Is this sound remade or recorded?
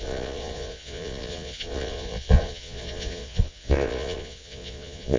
remade